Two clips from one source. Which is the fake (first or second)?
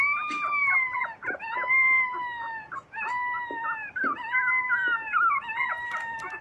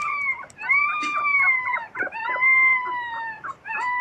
second